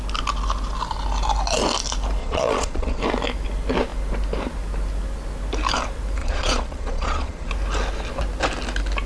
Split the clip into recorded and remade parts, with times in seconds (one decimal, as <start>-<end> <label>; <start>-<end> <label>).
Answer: 0.0-2.2 recorded; 2.2-3.0 remade; 3.0-6.2 recorded; 6.2-7.5 remade; 7.5-9.1 recorded